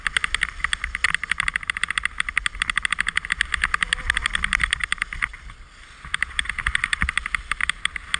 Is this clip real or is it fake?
real